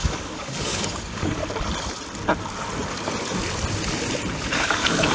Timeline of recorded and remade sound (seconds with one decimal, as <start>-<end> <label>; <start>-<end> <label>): 0.0-1.4 remade; 1.4-4.5 recorded; 4.5-5.1 remade